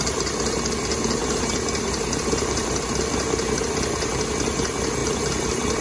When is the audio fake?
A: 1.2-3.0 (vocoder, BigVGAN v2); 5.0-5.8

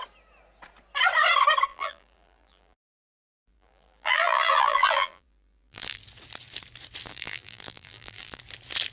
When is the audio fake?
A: 1.7-6.0 (vocoder, BigVGAN v2); 7.1-8.4

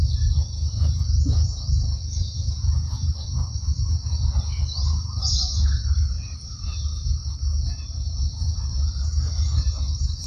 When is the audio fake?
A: 0.0-7.2 (vocoder, BigVGAN v2); 7.9-10.3